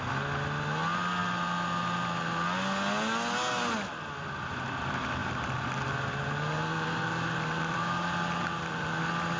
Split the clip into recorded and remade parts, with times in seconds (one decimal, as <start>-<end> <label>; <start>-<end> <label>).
0.0-5.2 recorded; 5.2-9.0 remade; 9.0-9.4 recorded